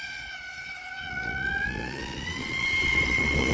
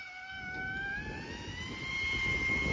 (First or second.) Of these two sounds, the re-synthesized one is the first